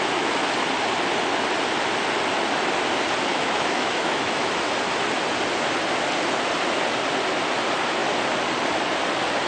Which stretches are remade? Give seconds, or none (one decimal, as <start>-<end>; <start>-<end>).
3.3-4.5